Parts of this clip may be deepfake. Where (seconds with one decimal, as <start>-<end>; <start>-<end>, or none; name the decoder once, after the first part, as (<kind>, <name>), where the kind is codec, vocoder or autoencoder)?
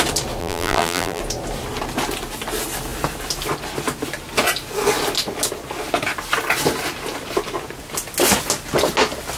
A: 0.4-1.2 (vocoder, BigVGAN v2)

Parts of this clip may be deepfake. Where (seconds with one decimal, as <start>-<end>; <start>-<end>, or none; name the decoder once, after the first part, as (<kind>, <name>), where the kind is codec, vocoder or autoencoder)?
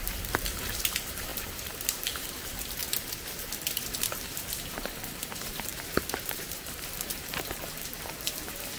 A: 0.0-2.8 (vocoder, BigVGAN v2); 4.0-8.8